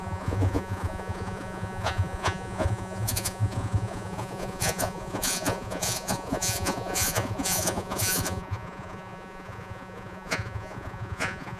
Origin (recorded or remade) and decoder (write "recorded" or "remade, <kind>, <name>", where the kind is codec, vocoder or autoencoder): remade, vocoder, Vocos